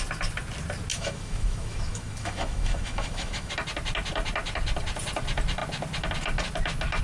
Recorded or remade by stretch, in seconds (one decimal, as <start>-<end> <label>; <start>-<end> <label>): 0.0-0.9 recorded; 0.9-3.5 remade; 3.5-7.0 recorded